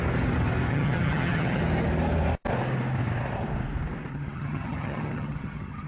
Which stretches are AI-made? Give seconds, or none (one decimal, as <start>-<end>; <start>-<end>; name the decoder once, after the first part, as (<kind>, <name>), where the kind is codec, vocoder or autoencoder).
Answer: 0.7-1.6 (vocoder, HiFi-GAN); 4.1-5.9